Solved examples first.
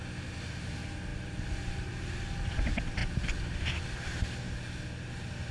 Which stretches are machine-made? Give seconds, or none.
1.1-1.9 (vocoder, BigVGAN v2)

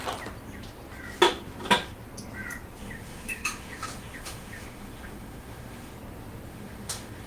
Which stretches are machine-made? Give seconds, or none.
2.8-5.9 (autoencoder, DAC-VAE); 6.5-7.3

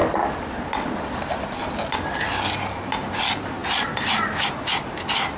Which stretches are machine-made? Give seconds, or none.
none